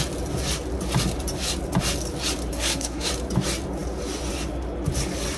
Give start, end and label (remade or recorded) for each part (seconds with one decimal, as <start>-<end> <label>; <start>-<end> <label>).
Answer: 0.0-2.5 recorded; 2.5-3.1 remade; 3.1-5.4 recorded